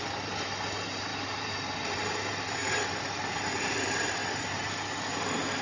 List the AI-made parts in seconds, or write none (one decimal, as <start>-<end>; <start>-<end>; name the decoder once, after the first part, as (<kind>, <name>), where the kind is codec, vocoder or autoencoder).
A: 1.1-1.9 (vocoder, BigVGAN v2); 4.2-4.7